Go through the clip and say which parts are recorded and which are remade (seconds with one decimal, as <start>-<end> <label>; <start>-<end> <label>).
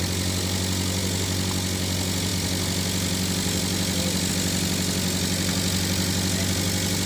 0.0-7.1 recorded